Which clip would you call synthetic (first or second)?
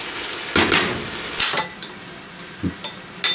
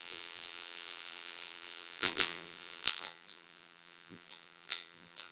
second